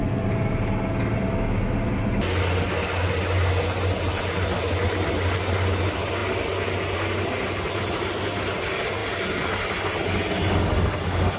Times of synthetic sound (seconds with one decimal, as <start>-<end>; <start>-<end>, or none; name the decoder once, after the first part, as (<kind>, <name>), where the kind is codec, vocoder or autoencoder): none